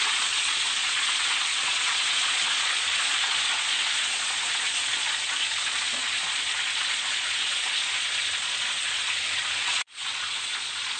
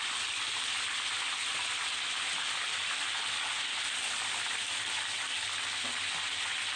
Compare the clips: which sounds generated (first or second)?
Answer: first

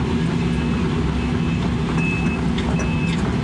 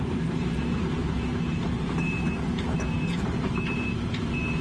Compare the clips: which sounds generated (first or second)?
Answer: second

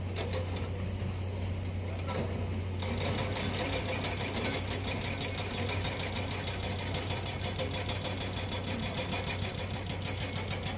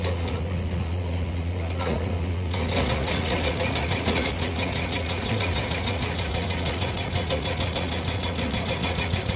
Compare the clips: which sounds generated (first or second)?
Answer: second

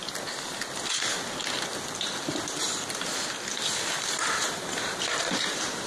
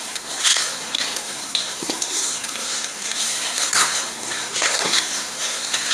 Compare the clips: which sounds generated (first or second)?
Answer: second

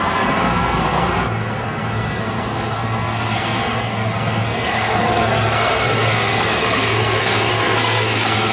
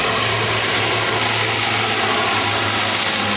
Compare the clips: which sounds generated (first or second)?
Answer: first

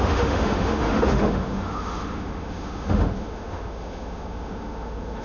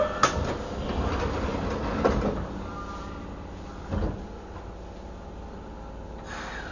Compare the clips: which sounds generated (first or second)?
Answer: first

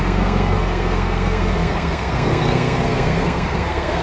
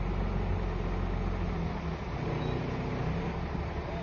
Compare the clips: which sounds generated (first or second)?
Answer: first